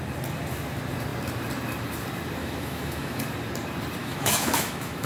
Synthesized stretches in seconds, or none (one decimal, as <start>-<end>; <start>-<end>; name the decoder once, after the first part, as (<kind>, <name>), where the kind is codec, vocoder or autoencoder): 2.4-3.2 (autoencoder, DAC-VAE); 4.0-5.1